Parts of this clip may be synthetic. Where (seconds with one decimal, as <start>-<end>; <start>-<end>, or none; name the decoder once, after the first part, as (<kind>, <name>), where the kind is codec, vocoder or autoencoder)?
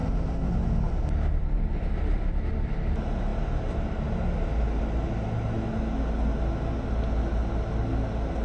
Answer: none